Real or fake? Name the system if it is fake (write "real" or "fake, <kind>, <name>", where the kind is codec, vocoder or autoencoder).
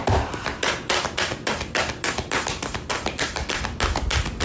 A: real